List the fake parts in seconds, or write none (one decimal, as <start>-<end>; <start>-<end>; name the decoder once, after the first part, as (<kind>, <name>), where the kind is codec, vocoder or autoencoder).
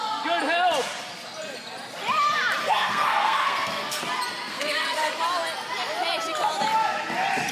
2.6-4.0 (codec, SNAC); 4.5-5.1